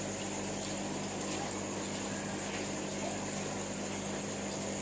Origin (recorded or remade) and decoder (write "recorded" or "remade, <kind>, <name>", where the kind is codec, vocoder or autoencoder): recorded